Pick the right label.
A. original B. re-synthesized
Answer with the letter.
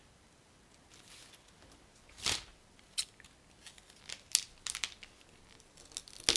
A